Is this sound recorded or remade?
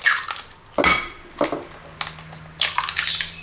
recorded